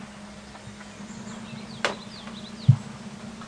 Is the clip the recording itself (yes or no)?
yes